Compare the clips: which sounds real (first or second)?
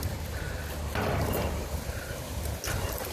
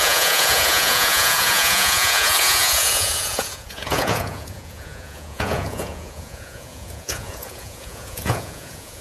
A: first